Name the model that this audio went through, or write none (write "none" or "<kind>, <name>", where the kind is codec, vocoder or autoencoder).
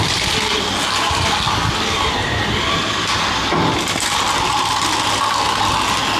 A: none